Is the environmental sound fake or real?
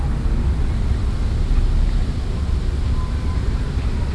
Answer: real